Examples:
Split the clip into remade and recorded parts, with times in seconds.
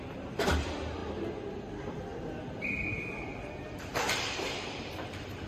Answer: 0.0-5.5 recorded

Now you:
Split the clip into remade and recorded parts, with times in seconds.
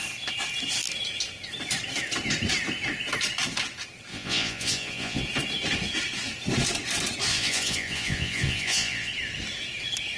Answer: 0.0-4.1 recorded; 4.1-5.2 remade; 5.2-7.3 recorded; 7.3-9.1 remade; 9.1-10.2 recorded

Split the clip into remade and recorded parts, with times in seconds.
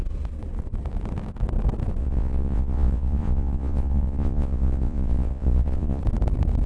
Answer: 0.0-2.0 recorded; 2.0-6.0 remade; 6.0-6.7 recorded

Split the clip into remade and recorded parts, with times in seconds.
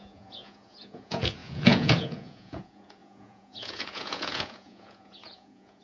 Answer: 0.0-5.8 remade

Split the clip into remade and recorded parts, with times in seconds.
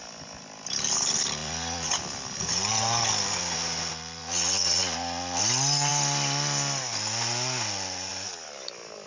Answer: 0.0-1.4 recorded; 1.4-2.0 remade; 2.0-4.2 recorded; 4.2-5.4 remade; 5.4-9.1 recorded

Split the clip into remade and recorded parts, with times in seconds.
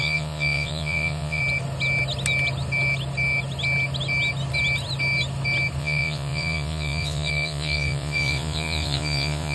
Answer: 0.0-1.4 remade; 1.4-5.8 recorded; 5.8-9.5 remade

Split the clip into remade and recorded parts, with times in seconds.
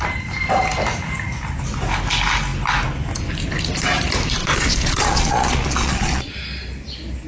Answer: 0.0-4.4 recorded; 4.4-6.3 remade; 6.3-7.3 recorded